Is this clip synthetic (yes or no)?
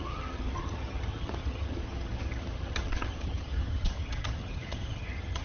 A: yes